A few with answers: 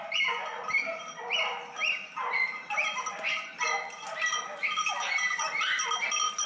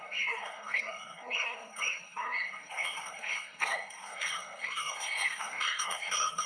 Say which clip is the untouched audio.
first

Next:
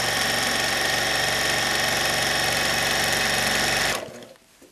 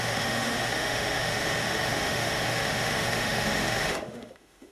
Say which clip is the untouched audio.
first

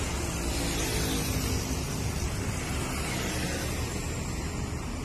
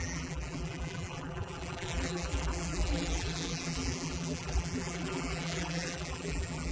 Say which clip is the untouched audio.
first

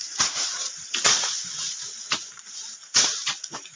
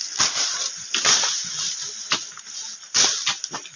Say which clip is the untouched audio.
second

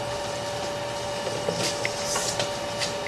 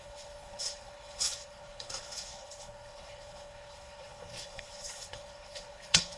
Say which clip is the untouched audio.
first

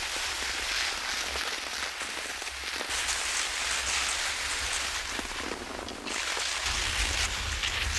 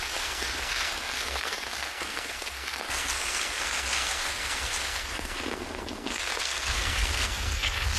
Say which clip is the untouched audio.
first